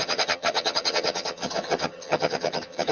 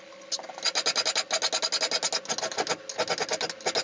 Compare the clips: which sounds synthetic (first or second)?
first